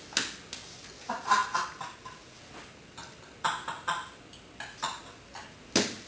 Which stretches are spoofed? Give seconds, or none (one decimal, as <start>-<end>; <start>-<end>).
none